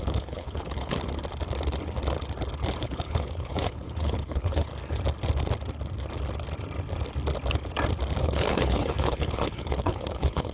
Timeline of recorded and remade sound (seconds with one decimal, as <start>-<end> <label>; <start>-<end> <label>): 0.0-0.9 remade; 0.9-2.8 recorded; 2.8-4.7 remade; 4.7-8.2 recorded; 8.2-10.5 remade